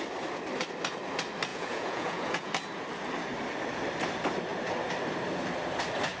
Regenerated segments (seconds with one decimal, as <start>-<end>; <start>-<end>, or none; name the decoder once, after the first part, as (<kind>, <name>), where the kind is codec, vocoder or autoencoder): 1.5-2.5 (vocoder, Vocos)